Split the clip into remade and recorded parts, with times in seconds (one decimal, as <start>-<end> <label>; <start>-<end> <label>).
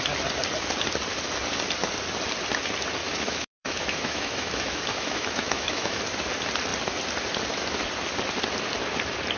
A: 0.0-3.0 recorded; 3.0-6.0 remade; 6.0-9.4 recorded